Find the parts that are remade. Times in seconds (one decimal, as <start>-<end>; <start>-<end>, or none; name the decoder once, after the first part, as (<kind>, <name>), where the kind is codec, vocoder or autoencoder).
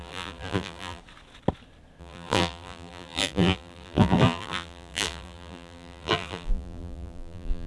0.0-1.0 (vocoder, BigVGAN v2); 2.0-7.7